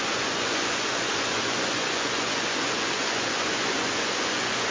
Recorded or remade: remade